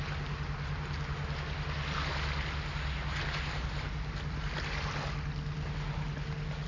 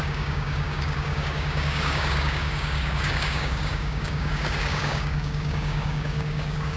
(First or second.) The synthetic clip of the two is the second